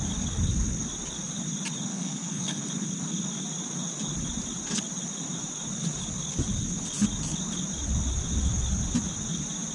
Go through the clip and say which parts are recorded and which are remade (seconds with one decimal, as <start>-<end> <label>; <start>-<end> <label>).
0.0-1.9 recorded; 1.9-2.6 remade; 2.6-9.7 recorded